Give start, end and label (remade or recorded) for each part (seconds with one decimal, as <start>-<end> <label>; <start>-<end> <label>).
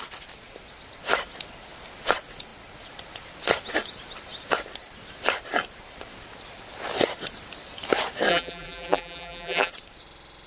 0.0-8.3 recorded; 8.3-9.7 remade; 9.7-10.5 recorded